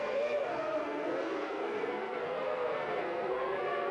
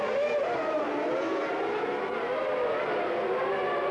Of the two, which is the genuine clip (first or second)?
second